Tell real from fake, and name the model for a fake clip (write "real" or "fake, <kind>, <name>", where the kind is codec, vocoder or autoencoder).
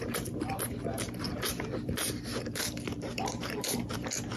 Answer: fake, vocoder, BigVGAN v2